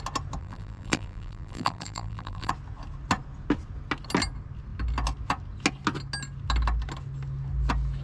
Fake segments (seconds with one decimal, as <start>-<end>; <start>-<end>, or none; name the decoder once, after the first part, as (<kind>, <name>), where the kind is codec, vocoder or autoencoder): 0.4-2.5 (vocoder, BigVGAN v2)